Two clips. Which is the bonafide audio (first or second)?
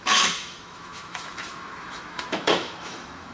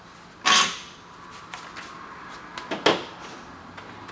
second